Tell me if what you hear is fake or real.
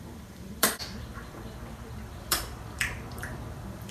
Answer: fake